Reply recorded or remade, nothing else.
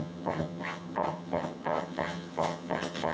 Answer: remade